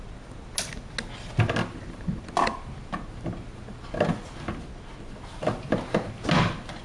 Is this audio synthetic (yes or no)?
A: no